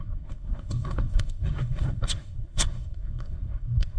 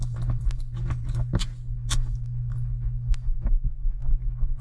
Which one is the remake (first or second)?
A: first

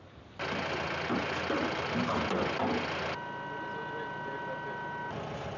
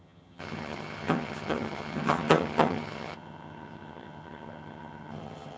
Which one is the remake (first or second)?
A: second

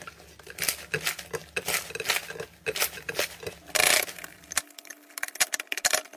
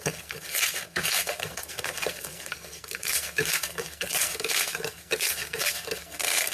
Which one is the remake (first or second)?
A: second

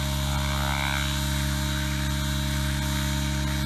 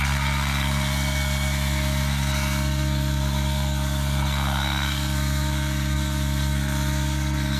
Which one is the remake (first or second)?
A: second